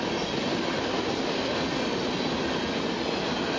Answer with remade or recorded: recorded